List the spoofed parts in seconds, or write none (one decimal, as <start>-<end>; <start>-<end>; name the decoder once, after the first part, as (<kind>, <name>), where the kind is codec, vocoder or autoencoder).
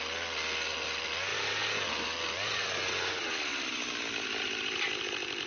none